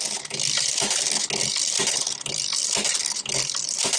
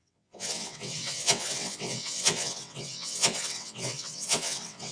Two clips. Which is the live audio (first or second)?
first